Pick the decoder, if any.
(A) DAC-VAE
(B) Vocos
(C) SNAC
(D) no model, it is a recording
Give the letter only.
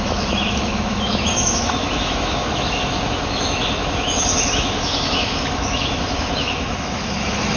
A